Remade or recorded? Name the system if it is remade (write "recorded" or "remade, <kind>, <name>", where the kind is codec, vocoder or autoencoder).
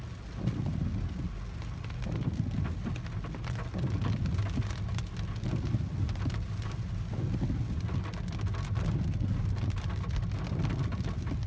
recorded